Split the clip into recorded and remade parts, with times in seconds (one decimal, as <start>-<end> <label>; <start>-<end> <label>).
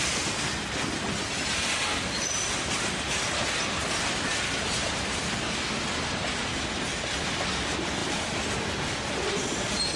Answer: 0.0-10.0 recorded